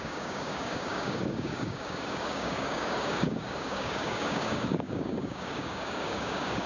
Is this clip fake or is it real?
fake